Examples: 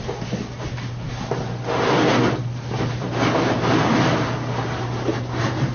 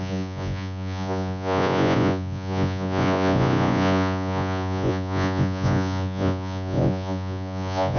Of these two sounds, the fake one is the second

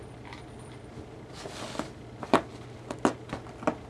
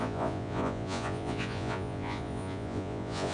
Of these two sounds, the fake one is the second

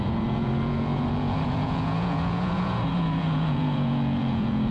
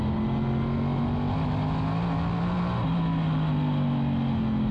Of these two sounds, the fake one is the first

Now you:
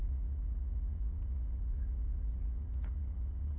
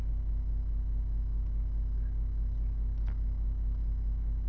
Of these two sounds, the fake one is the first